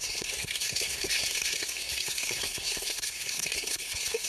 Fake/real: fake